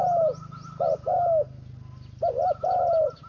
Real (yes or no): yes